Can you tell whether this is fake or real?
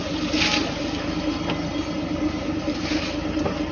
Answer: real